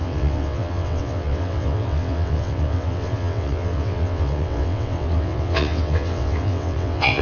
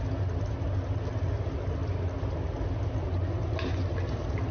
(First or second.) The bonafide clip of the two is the second